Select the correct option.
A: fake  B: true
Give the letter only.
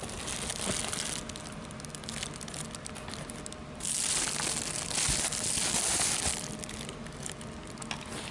B